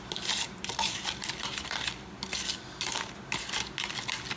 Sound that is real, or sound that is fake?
real